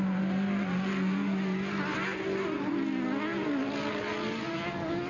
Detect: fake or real real